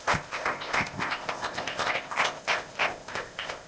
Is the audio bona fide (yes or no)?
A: no